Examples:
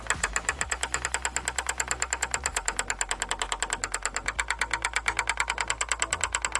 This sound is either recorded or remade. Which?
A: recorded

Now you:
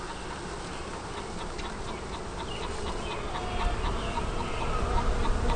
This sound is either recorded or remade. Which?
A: recorded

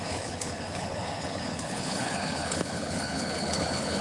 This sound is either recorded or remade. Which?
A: remade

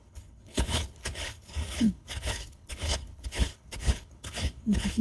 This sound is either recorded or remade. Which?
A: remade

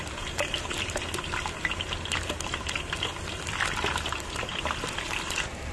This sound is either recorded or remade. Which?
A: recorded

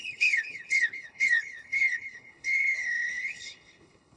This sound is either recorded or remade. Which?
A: remade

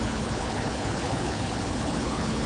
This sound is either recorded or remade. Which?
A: remade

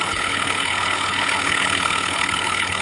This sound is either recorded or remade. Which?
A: remade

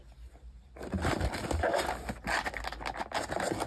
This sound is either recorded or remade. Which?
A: recorded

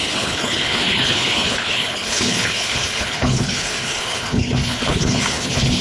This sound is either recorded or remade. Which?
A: remade